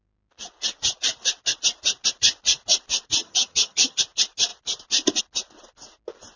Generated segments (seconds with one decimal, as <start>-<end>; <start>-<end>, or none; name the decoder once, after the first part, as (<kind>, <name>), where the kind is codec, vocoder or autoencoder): 3.2-4.0 (vocoder, HiFi-GAN)